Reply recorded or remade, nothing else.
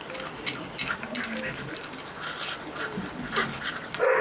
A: recorded